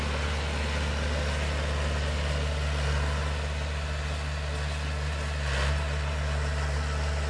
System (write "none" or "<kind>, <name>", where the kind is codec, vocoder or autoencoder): none